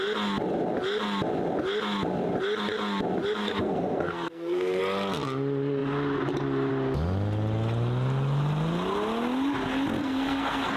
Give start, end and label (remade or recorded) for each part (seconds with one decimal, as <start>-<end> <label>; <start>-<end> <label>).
0.0-3.4 recorded; 3.4-4.8 remade; 4.8-10.0 recorded; 10.0-10.8 remade